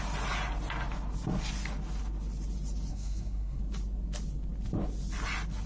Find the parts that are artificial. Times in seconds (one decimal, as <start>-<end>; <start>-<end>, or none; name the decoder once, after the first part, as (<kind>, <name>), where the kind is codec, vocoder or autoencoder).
2.9-3.6 (codec, SNAC)